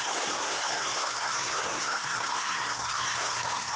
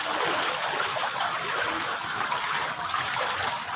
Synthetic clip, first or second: first